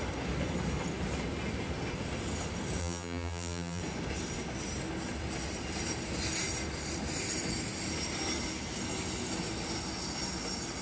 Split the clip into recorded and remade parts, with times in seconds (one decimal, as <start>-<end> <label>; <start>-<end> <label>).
0.0-2.8 recorded; 2.8-3.8 remade; 3.8-10.8 recorded